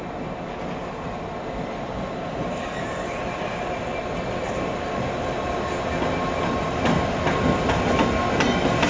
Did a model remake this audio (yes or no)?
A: no